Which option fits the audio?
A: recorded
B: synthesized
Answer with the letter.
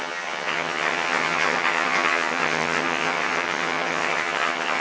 B